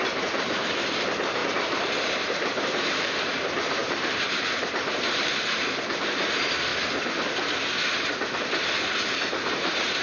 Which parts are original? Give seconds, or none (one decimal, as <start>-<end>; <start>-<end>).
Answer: 6.7-9.1